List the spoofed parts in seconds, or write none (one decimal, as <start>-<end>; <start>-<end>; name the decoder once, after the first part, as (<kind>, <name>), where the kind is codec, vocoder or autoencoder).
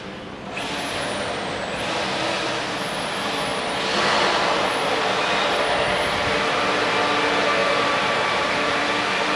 7.6-8.8 (vocoder, BigVGAN v2)